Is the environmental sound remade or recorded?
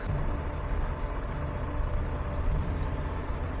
recorded